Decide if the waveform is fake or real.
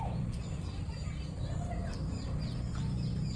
real